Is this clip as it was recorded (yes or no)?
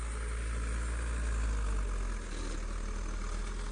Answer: yes